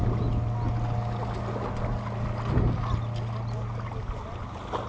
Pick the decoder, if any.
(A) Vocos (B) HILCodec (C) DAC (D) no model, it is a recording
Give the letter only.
D